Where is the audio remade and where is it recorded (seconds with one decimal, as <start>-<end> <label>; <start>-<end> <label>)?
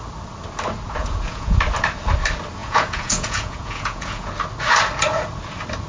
0.0-1.0 recorded; 1.0-1.6 remade; 1.6-2.6 recorded; 2.6-4.3 remade; 4.3-5.9 recorded